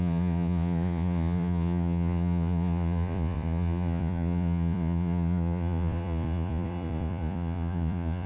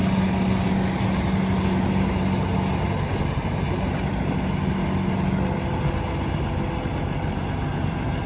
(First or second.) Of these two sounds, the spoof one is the first